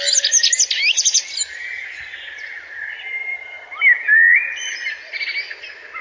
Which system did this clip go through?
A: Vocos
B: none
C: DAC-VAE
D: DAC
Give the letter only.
B